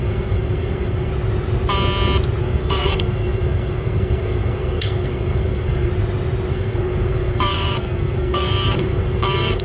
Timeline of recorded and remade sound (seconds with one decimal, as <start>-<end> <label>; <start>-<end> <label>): 0.0-1.1 remade; 1.1-2.4 recorded; 2.4-5.9 remade; 5.9-6.5 recorded; 6.5-9.6 remade